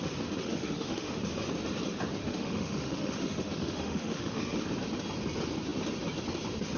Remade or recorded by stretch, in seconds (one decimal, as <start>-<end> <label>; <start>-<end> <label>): 0.0-0.4 recorded; 0.4-1.2 remade; 1.2-2.2 recorded; 2.2-4.6 remade; 4.6-6.8 recorded

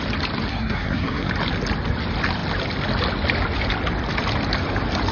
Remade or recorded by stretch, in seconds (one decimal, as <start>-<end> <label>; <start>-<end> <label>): 0.0-0.5 recorded; 0.5-1.3 remade; 1.3-5.1 recorded

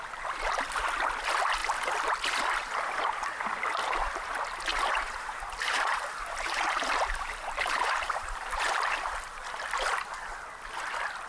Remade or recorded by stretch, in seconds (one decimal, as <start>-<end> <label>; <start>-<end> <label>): 0.0-4.7 recorded; 4.7-9.7 remade; 9.7-11.3 recorded

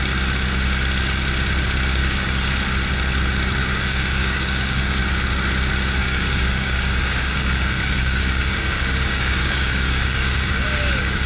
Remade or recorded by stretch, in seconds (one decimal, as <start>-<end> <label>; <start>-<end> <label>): 0.0-2.0 recorded; 2.0-2.5 remade; 2.5-3.6 recorded; 3.6-5.0 remade; 5.0-6.0 recorded; 6.0-11.3 remade